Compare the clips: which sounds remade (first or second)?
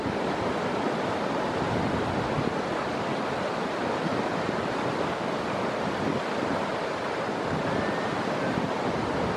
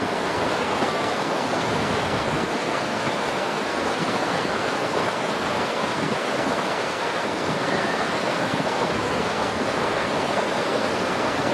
second